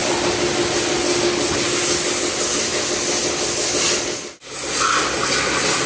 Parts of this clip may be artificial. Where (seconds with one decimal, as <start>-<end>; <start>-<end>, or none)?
none